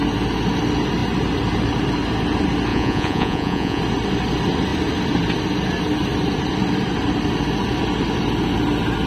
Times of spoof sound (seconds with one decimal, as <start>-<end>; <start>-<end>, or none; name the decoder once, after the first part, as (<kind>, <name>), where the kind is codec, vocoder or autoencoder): 2.7-3.8 (vocoder, Vocos)